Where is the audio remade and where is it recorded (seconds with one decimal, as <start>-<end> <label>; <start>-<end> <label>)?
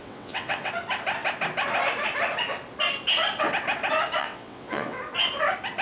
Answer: 0.0-0.7 remade; 0.7-4.2 recorded; 4.2-5.0 remade; 5.0-5.8 recorded